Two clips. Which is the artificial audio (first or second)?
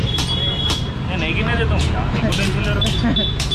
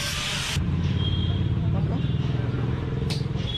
second